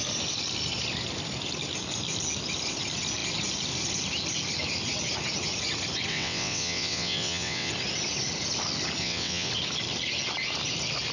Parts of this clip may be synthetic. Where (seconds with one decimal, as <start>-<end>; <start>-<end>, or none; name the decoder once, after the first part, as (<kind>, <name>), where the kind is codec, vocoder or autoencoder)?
6.1-7.7 (vocoder, WaveNeXt); 9.0-9.5